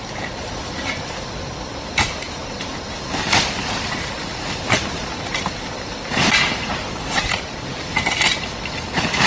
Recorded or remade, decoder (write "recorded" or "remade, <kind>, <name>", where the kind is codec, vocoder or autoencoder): recorded